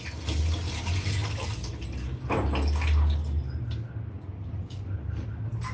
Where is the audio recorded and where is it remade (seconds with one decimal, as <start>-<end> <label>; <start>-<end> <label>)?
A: 0.0-5.7 recorded